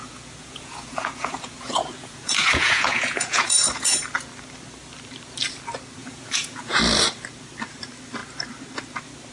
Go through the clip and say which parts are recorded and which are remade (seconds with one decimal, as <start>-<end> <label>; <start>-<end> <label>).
0.0-4.0 remade; 4.0-6.0 recorded; 6.0-6.8 remade; 6.8-9.3 recorded